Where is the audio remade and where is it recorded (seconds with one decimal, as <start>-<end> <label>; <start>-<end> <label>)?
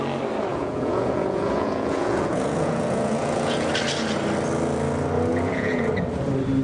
0.0-0.5 recorded; 0.5-3.7 remade; 3.7-5.3 recorded; 5.3-5.9 remade; 5.9-6.6 recorded